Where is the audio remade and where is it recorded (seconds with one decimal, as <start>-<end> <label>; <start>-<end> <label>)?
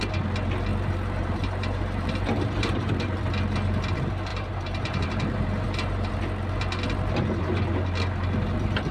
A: 0.0-0.7 recorded; 0.7-3.2 remade; 3.2-4.3 recorded; 4.3-6.1 remade; 6.1-8.9 recorded